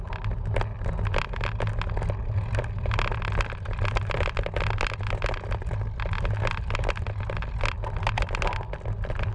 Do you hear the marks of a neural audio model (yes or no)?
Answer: no